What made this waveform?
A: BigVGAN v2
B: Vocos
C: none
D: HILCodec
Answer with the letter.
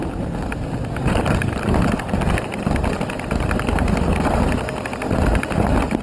C